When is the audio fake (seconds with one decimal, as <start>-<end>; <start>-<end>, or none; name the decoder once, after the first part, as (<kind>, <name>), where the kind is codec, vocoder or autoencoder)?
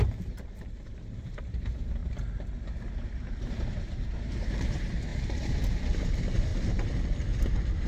0.0-2.0 (vocoder, BigVGAN v2); 3.4-6.5; 7.5-7.9